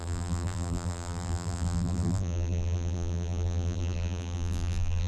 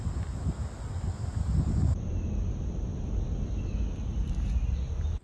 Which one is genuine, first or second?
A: second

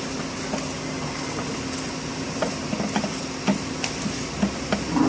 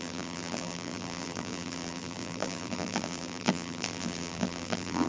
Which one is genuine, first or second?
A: first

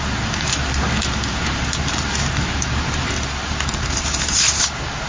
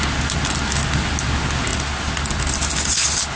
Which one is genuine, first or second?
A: second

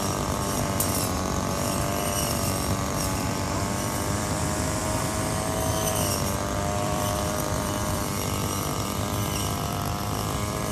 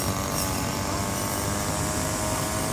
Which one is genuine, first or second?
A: second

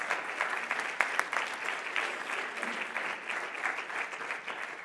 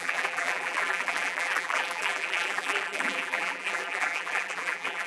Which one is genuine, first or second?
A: first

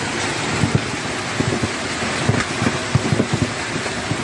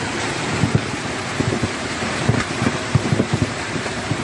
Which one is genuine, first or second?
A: first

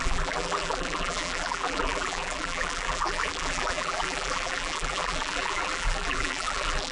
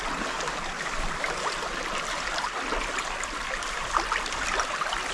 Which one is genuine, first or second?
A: second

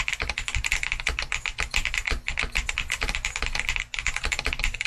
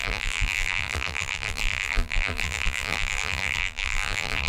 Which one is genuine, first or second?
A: first